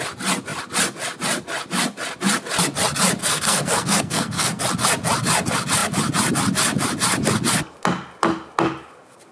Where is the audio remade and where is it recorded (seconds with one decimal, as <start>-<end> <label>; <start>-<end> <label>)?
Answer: 0.0-3.2 recorded; 3.2-4.6 remade; 4.6-9.3 recorded